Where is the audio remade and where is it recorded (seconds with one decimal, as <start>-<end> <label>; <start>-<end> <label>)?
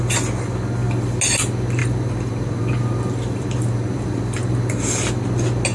0.0-1.8 recorded; 1.8-5.1 remade; 5.1-5.7 recorded